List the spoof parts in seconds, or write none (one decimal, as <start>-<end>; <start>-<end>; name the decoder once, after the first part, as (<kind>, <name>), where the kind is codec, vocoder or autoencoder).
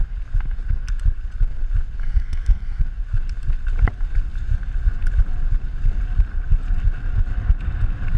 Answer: 2.0-2.8 (codec, SNAC)